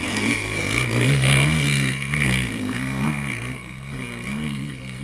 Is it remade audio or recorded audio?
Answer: remade